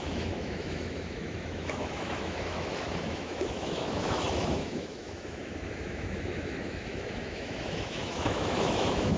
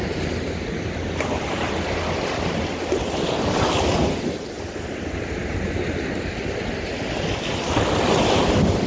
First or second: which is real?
second